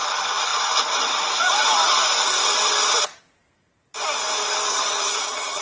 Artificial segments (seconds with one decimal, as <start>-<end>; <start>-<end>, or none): 4.7-5.6